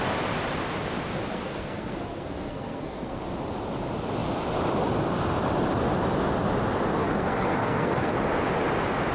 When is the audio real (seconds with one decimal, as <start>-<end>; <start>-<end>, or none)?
0.0-1.3; 3.2-7.0; 8.1-9.1